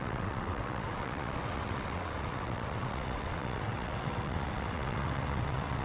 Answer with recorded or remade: remade